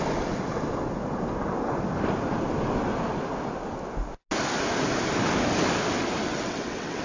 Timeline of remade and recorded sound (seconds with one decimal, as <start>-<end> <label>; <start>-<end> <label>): 0.0-6.2 recorded; 6.2-7.0 remade